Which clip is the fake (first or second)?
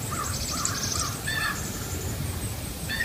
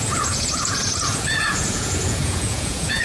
second